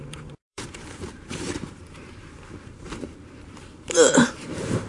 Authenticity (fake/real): fake